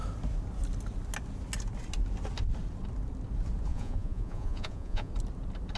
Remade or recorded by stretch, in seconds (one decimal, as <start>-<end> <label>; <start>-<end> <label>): 0.0-3.7 recorded; 3.7-5.1 remade; 5.1-5.8 recorded